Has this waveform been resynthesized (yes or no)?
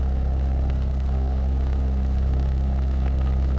yes